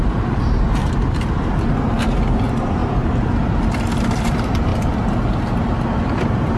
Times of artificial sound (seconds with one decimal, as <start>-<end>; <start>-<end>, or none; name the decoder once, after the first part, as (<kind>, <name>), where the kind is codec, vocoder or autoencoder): 0.0-0.8 (vocoder, BigVGAN v2); 2.0-4.7; 6.1-6.6